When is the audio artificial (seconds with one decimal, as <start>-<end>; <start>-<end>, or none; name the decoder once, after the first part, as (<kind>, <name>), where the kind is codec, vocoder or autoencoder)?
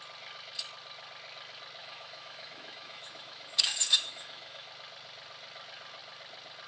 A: 1.8-4.7 (autoencoder, DAC-VAE)